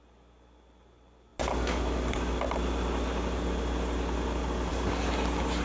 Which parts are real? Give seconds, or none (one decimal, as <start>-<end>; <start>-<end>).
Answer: 0.0-5.6